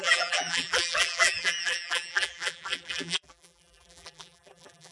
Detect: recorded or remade remade